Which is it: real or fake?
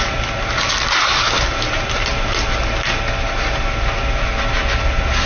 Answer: real